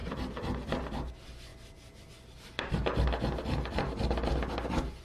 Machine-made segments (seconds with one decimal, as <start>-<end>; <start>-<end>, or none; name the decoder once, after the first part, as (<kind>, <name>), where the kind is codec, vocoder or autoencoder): none